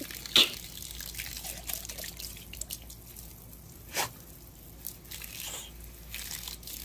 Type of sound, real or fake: real